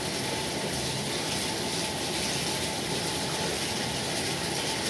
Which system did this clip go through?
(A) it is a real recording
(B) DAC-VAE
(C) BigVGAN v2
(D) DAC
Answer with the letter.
A